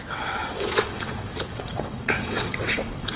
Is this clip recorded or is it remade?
remade